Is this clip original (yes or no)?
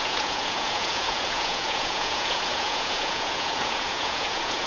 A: no